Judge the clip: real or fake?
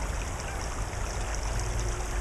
real